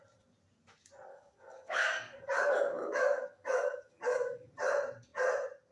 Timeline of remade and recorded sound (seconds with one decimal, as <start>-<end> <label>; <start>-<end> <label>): 0.0-1.1 recorded; 1.1-4.5 remade; 4.5-5.7 recorded